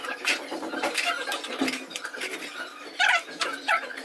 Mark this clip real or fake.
fake